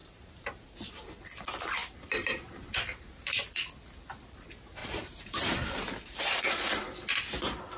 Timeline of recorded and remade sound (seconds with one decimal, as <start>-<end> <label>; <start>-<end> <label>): 0.0-0.9 remade; 0.9-4.8 recorded; 4.8-6.5 remade; 6.5-7.8 recorded